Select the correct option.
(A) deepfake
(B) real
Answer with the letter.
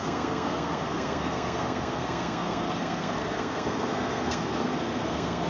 A